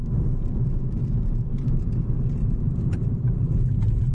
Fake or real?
fake